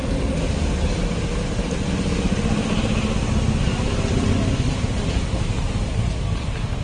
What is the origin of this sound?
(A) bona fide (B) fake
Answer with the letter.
A